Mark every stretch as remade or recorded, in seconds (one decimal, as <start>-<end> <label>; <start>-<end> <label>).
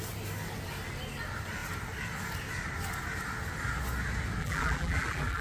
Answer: 0.0-4.4 recorded; 4.4-5.4 remade